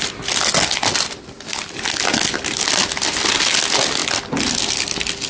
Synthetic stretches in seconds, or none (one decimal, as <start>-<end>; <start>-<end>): none